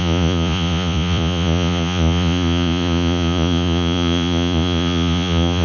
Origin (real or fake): fake